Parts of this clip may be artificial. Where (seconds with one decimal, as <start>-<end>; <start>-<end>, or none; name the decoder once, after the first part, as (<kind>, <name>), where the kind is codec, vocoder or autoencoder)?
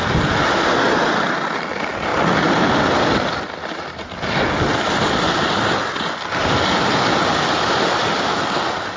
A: none